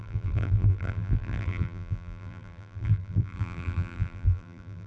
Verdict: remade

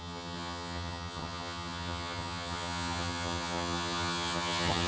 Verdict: remade